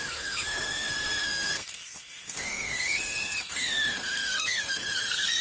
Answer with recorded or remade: remade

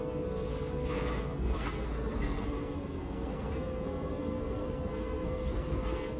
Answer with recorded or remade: remade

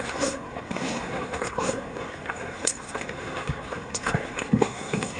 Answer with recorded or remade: remade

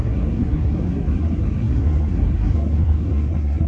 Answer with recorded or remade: remade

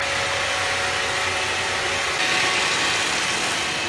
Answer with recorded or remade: recorded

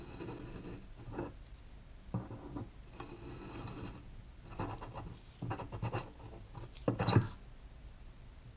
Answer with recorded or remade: recorded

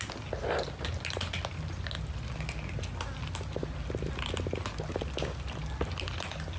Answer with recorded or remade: recorded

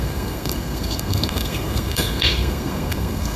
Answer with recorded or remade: remade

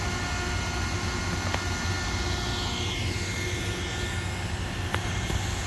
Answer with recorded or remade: recorded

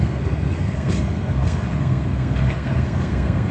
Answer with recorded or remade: remade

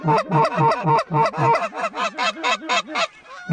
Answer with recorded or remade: recorded